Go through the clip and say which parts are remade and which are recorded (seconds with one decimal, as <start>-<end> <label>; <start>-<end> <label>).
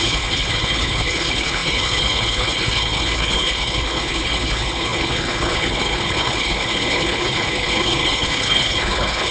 0.0-9.3 remade